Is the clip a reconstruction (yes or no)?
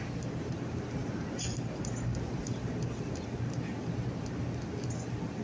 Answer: no